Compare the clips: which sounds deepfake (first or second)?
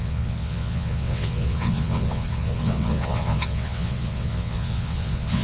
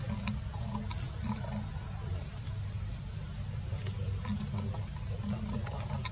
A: first